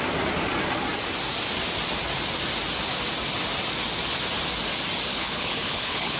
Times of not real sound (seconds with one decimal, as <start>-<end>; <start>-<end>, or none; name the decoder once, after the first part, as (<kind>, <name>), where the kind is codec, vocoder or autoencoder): 5.1-6.2 (codec, HILCodec)